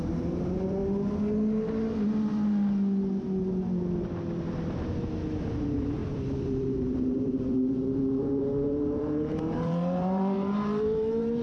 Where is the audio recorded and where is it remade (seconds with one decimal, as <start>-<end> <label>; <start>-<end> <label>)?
0.0-0.8 remade; 0.8-5.5 recorded; 5.5-11.4 remade